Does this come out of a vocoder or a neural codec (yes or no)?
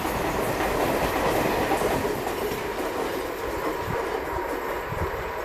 no